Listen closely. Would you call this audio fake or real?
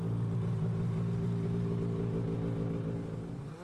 real